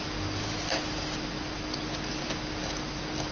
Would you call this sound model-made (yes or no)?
no